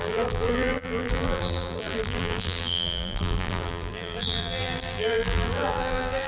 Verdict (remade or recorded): remade